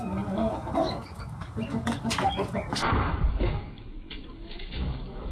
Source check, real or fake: fake